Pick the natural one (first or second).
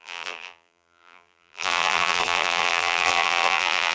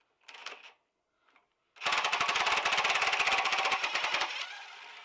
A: second